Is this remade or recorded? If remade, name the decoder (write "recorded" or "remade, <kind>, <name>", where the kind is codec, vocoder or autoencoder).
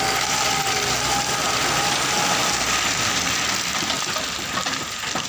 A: recorded